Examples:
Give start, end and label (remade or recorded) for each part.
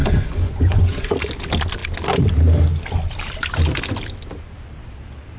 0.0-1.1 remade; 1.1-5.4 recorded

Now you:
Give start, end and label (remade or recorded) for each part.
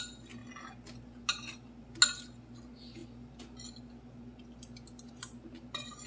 0.0-6.1 recorded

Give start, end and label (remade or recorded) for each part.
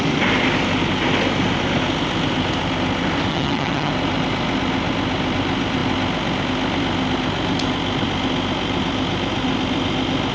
0.0-3.3 recorded; 3.3-3.9 remade; 3.9-10.3 recorded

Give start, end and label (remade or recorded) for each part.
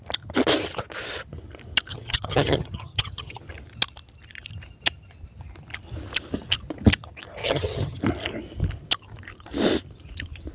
0.0-1.9 recorded; 1.9-3.4 remade; 3.4-7.4 recorded; 7.4-8.0 remade; 8.0-10.5 recorded